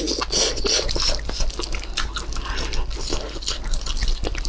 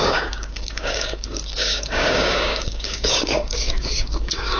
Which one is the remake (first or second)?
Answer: second